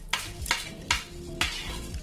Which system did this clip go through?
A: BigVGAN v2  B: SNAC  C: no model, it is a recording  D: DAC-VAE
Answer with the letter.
C